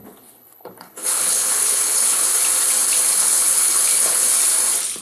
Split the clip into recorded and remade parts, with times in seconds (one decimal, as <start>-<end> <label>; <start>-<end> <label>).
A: 0.0-2.3 remade; 2.3-3.1 recorded; 3.1-4.3 remade; 4.3-5.0 recorded